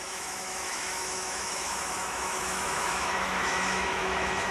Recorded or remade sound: remade